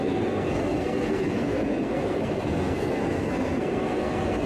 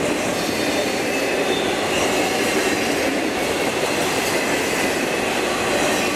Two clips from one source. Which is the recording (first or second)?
second